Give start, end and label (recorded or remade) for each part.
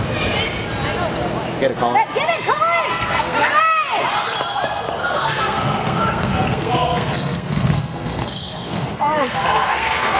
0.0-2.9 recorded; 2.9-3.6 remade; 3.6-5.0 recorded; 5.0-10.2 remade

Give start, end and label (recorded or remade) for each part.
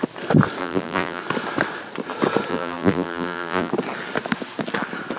0.0-0.6 recorded; 0.6-1.2 remade; 1.2-2.5 recorded; 2.5-3.7 remade; 3.7-5.2 recorded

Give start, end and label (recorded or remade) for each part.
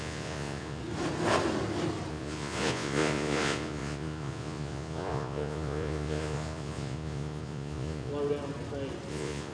0.0-0.8 remade; 0.8-2.1 recorded; 2.1-8.1 remade; 8.1-9.1 recorded; 9.1-9.5 remade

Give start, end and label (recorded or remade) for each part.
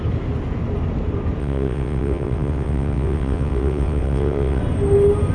0.0-1.4 recorded; 1.4-4.6 remade; 4.6-5.3 recorded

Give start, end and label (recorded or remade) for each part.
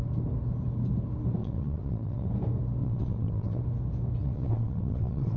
0.0-1.4 recorded; 1.4-2.3 remade; 2.3-2.8 recorded; 2.8-3.6 remade; 3.6-4.2 recorded; 4.2-5.4 remade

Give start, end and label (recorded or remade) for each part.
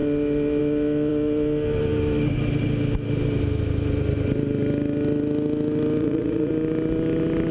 0.0-6.0 recorded; 6.0-6.5 remade; 6.5-7.5 recorded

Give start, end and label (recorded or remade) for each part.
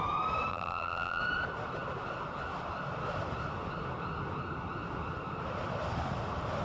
0.0-0.5 recorded; 0.5-1.2 remade; 1.2-6.6 recorded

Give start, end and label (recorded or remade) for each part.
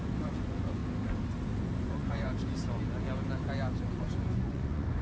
0.0-0.8 remade; 0.8-1.6 recorded; 1.6-2.3 remade; 2.3-3.9 recorded; 3.9-5.0 remade